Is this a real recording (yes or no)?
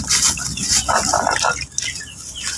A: yes